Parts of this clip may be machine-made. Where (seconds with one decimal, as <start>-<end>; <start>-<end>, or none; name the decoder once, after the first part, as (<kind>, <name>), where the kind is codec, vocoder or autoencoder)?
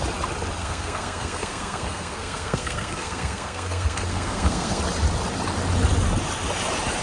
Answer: 0.6-4.8 (codec, SNAC)